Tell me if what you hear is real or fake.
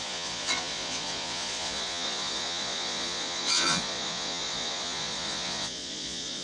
fake